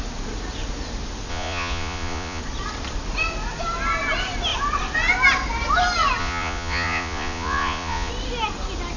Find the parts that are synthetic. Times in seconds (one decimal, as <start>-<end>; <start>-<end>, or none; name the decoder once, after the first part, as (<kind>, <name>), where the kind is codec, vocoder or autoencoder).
1.3-2.4 (vocoder, Vocos); 6.2-8.1